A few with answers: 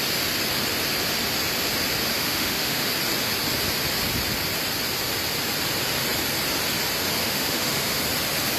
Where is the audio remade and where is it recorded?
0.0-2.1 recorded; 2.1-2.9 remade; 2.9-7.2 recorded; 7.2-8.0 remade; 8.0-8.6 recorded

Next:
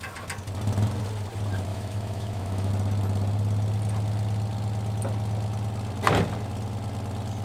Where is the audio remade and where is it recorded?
0.0-1.7 recorded; 1.7-2.7 remade; 2.7-7.4 recorded

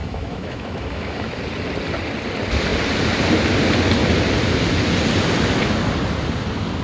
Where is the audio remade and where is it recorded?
0.0-1.3 remade; 1.3-6.8 recorded

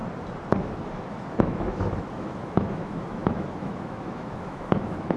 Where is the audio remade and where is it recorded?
0.0-0.6 recorded; 0.6-5.2 remade

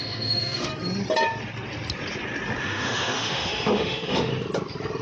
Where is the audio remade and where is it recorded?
0.0-0.7 remade; 0.7-2.6 recorded; 2.6-4.3 remade; 4.3-5.0 recorded

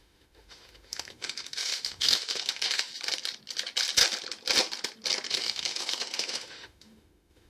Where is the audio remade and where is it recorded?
0.0-2.9 remade; 2.9-5.3 recorded; 5.3-7.5 remade

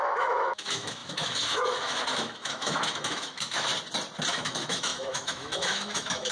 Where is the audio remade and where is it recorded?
0.0-3.7 remade; 3.7-4.3 recorded; 4.3-6.3 remade